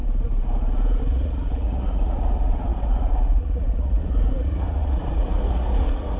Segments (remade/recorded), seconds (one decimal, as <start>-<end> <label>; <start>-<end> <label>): 0.0-1.0 recorded; 1.0-6.2 remade